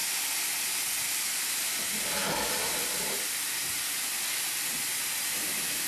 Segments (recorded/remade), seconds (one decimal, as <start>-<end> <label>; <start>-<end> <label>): 0.0-5.9 recorded